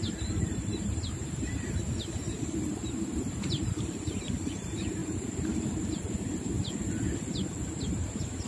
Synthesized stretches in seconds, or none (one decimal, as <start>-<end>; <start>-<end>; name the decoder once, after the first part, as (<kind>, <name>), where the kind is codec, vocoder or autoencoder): 0.0-5.0 (vocoder, BigVGAN v2); 7.7-8.5